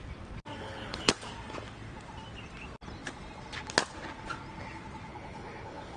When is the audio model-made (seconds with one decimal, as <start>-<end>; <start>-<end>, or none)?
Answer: 0.6-1.1; 5.1-6.0